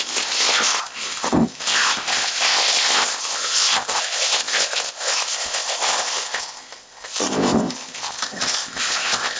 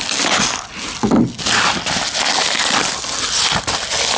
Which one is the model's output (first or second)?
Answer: first